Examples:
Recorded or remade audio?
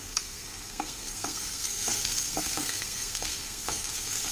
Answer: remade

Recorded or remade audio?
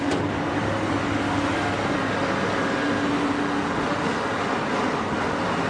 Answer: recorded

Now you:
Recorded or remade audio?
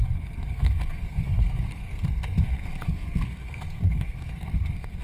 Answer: remade